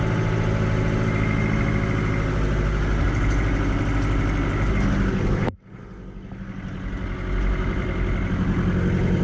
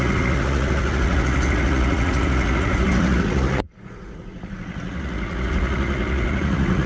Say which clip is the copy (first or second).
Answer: second